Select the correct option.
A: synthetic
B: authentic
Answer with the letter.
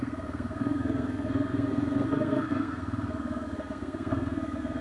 A